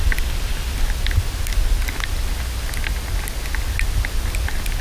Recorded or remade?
recorded